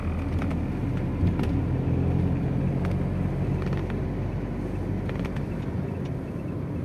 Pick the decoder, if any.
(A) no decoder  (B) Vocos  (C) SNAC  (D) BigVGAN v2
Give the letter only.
A